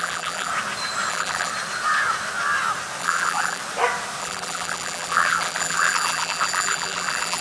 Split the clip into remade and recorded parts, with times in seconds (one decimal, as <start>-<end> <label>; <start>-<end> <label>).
0.0-0.5 remade; 0.5-1.1 recorded; 1.1-1.5 remade; 1.5-3.0 recorded; 3.0-3.6 remade; 3.6-4.2 recorded; 4.2-7.4 remade